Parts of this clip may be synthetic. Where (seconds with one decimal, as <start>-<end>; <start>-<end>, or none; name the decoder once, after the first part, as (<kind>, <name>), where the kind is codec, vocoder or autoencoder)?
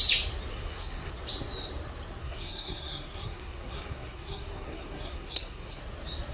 0.5-1.1 (codec, SNAC); 2.2-5.8